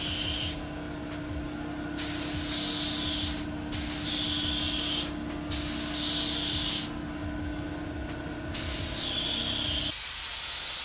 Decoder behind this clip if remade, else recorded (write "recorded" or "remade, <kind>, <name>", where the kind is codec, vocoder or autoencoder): recorded